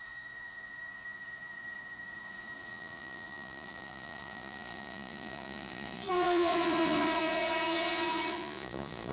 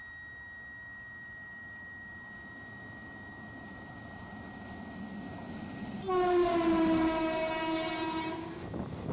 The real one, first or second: second